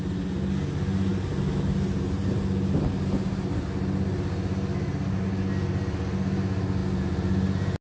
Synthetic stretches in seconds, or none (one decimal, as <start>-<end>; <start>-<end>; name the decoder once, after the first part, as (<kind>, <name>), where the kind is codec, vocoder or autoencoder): none

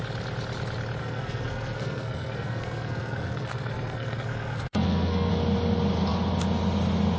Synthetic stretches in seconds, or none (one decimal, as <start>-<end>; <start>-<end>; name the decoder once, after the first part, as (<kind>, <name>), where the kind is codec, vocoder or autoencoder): 1.0-5.3 (codec, SNAC)

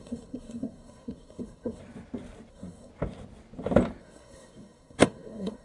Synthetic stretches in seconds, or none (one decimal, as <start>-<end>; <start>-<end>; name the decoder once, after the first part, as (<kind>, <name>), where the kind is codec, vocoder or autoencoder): 0.0-1.8 (codec, SNAC); 2.5-2.9; 4.0-5.6

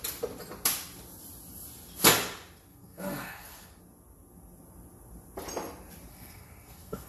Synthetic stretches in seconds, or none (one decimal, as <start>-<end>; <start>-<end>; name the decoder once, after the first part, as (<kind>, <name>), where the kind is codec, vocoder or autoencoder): 2.7-3.8 (codec, SNAC); 6.1-7.1

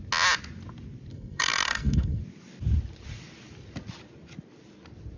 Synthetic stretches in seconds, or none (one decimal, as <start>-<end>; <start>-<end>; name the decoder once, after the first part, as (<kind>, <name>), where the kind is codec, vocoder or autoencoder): 1.1-2.2 (codec, SNAC)